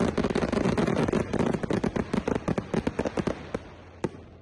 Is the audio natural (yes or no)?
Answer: yes